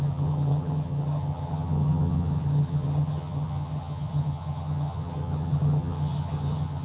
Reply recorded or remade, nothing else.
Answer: remade